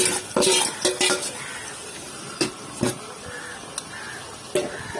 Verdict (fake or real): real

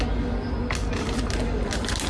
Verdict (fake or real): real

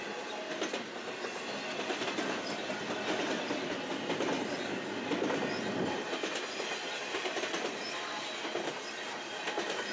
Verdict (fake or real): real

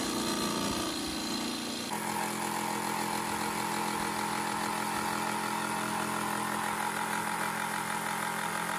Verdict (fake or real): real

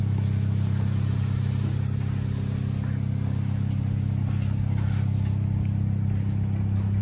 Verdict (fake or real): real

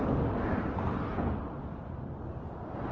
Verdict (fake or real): real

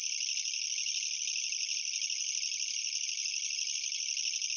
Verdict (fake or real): real